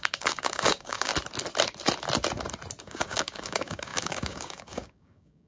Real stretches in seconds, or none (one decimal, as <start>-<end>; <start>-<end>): 1.1-2.8